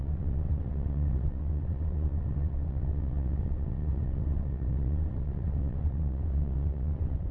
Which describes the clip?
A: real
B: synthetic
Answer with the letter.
B